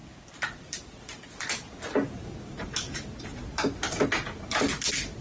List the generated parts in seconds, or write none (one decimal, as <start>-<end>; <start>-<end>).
none